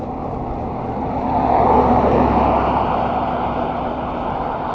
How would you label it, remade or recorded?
recorded